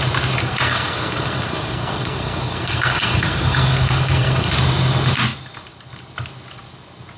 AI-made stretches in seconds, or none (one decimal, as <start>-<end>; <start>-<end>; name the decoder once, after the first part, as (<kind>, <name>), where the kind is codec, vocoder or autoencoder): 0.4-4.5 (codec, SNAC)